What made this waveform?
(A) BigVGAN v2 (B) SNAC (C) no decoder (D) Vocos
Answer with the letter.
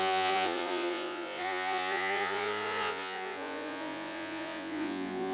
D